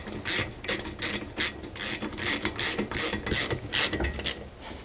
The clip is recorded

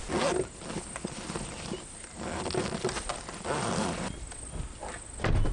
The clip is recorded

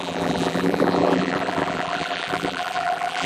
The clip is remade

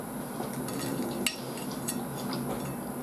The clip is recorded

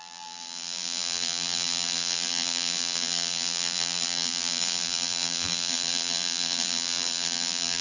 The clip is remade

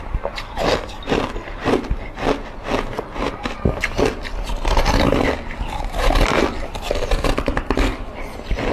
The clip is recorded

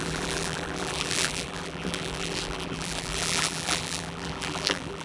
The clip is remade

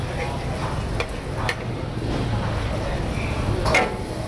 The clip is recorded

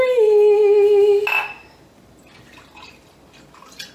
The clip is recorded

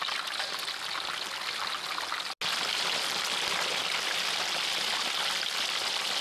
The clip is recorded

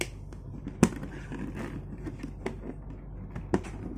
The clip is recorded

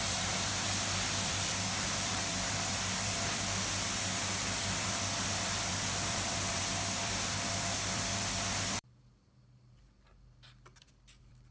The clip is remade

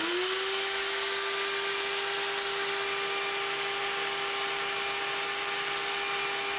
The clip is recorded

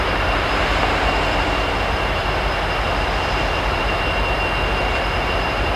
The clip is remade